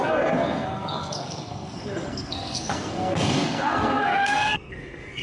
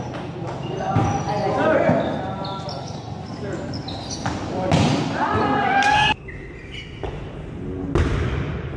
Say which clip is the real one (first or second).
second